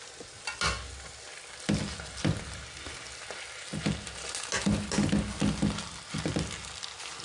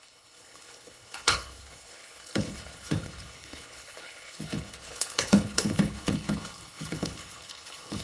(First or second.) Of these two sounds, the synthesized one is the second